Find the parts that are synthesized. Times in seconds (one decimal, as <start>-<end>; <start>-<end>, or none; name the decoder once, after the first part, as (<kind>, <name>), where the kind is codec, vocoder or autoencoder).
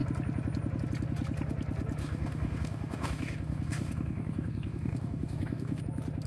2.0-5.8 (codec, DAC)